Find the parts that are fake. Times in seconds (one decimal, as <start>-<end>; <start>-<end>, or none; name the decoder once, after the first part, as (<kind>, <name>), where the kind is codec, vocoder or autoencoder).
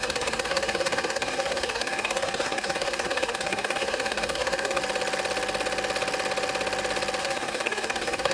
0.0-4.8 (codec, SNAC); 7.2-8.3